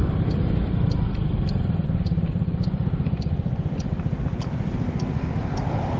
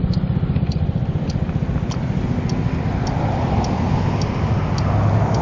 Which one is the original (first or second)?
second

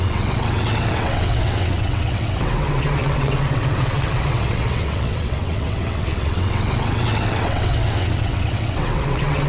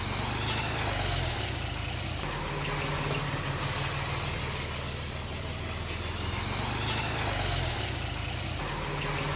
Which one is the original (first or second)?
second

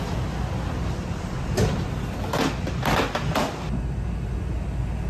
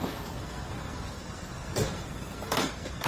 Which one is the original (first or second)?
first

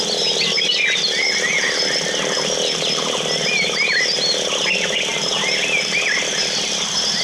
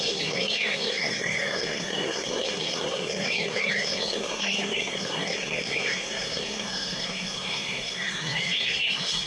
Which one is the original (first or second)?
first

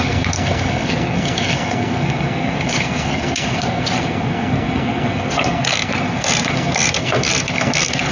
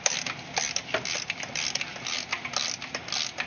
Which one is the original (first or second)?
second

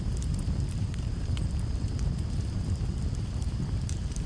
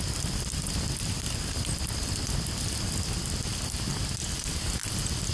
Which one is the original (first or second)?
second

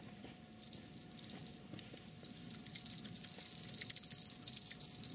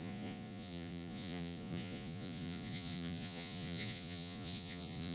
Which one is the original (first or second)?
first